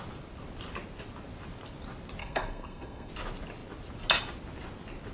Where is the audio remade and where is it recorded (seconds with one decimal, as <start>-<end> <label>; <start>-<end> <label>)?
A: 0.0-2.2 recorded; 2.2-3.1 remade; 3.1-5.1 recorded